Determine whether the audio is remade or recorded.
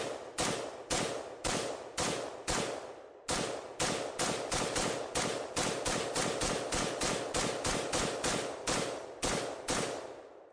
recorded